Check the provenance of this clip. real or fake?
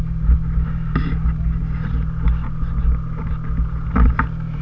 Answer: real